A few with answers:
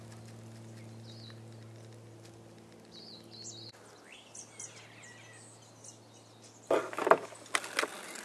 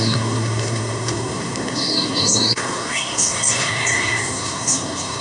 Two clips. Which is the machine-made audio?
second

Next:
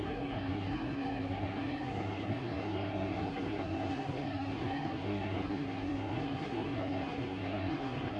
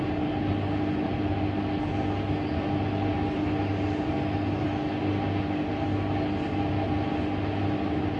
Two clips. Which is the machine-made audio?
first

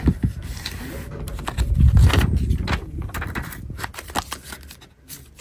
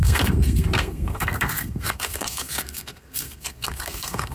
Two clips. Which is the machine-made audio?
second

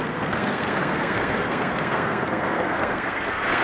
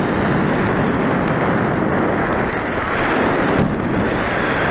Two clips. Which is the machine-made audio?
first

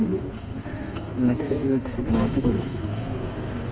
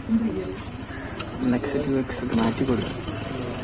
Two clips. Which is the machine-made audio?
first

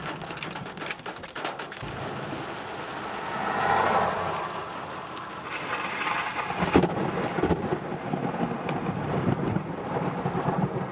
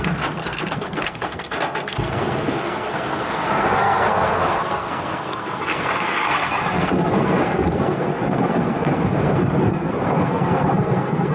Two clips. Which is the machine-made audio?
second